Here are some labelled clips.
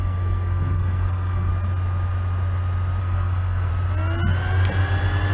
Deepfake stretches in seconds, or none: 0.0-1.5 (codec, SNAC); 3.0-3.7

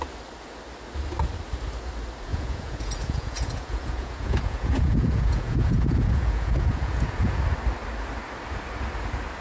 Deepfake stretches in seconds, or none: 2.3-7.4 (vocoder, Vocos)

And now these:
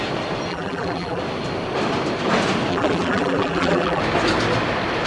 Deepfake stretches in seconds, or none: 0.5-1.2 (vocoder, BigVGAN v2); 2.7-4.0